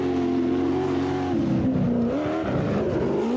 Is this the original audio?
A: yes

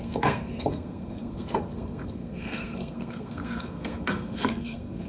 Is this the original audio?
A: no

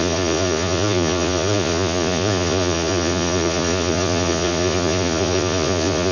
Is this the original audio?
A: no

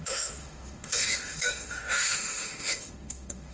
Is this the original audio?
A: no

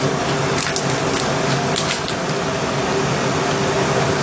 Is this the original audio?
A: yes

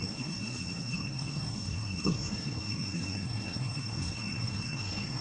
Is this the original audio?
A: no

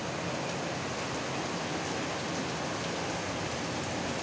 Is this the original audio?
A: yes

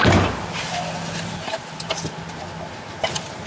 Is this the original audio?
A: yes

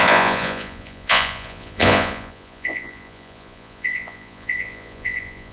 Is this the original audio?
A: no